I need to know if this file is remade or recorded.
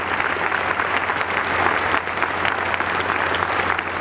recorded